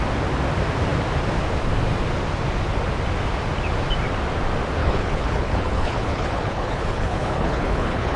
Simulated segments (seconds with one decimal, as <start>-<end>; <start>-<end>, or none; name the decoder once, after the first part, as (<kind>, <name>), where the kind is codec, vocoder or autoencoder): 4.8-8.2 (codec, HILCodec)